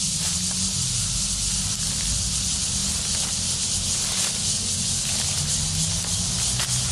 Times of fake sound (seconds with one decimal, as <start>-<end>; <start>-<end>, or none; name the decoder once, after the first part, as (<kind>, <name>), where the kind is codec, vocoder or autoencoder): none